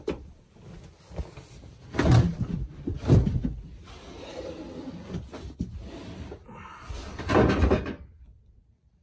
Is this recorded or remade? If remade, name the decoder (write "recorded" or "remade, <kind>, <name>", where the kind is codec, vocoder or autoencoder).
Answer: recorded